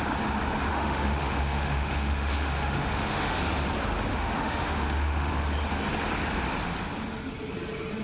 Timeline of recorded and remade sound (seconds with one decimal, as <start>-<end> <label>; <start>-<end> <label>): 0.0-0.7 recorded; 0.7-3.4 remade; 3.4-4.1 recorded; 4.1-5.3 remade; 5.3-8.0 recorded